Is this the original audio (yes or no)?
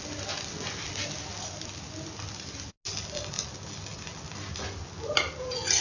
yes